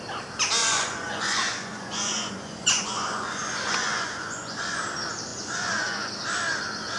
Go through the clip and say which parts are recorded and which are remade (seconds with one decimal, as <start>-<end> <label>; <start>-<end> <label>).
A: 0.0-0.6 recorded; 0.6-4.8 remade; 4.8-5.3 recorded; 5.3-6.1 remade; 6.1-7.0 recorded